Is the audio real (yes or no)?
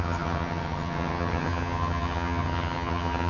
no